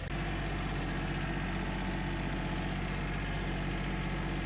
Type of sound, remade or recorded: recorded